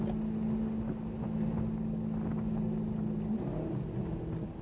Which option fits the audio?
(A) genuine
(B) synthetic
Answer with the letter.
A